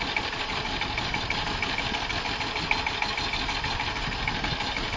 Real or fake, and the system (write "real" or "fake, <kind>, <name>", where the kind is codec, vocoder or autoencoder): real